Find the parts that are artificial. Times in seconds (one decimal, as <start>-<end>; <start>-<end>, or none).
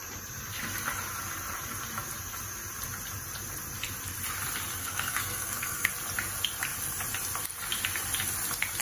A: 4.8-5.9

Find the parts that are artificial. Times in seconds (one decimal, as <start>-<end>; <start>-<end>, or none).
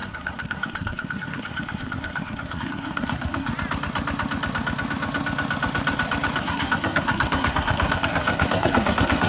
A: 0.0-3.5; 6.4-9.3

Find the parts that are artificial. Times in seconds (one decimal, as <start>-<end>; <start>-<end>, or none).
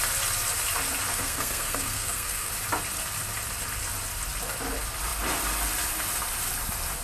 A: 1.1-2.5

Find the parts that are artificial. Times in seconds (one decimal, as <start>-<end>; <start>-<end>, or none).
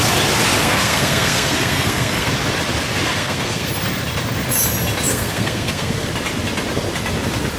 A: 0.6-2.3; 3.1-3.7; 5.1-6.1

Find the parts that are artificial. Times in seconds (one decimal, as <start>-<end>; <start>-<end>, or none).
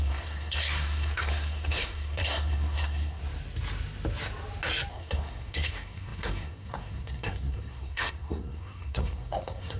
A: 0.0-3.2; 4.9-9.8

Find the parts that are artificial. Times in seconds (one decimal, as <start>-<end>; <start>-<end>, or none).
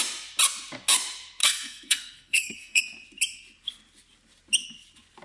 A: 1.4-2.8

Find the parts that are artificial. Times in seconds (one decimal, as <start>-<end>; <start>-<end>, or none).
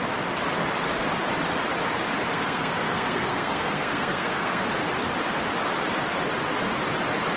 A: 2.3-4.7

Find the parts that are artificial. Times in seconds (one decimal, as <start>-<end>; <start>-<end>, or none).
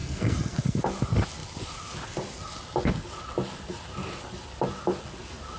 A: 0.0-0.8